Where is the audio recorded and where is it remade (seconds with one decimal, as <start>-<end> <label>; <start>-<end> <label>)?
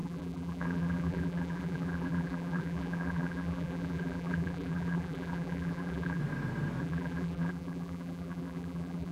0.0-6.2 remade; 6.2-6.8 recorded; 6.8-9.1 remade